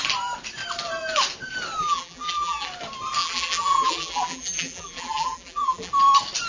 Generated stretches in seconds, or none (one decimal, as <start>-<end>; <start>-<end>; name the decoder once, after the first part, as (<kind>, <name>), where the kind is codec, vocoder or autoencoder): 1.8-2.7 (vocoder, BigVGAN v2); 3.2-5.9